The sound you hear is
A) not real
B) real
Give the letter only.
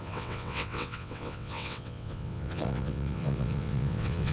A